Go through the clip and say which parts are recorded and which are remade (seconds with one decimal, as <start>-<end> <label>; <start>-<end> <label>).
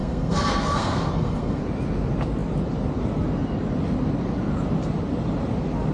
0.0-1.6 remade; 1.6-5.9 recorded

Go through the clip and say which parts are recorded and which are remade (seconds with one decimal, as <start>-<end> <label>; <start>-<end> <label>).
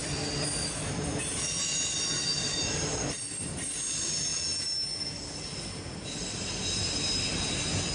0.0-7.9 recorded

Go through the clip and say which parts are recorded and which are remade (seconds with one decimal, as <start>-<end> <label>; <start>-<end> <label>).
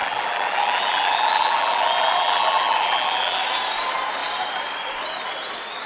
0.0-3.4 remade; 3.4-5.9 recorded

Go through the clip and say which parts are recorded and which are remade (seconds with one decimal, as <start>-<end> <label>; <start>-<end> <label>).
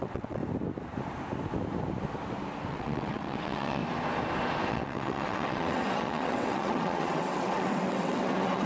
0.0-0.4 remade; 0.4-2.7 recorded; 2.7-3.8 remade; 3.8-4.7 recorded; 4.7-8.7 remade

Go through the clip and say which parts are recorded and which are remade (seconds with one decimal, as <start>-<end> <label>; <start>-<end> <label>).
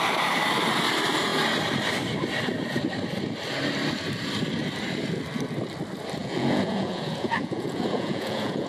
0.0-6.2 recorded; 6.2-8.7 remade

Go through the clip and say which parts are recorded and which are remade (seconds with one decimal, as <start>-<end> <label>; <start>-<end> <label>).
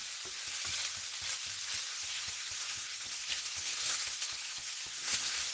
0.0-1.9 recorded; 1.9-5.5 remade